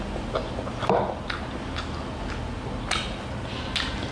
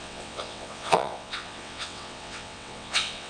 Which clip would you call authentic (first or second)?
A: first